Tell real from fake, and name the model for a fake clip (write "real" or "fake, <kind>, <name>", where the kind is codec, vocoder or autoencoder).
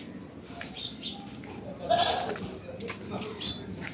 real